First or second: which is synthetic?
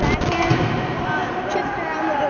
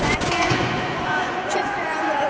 second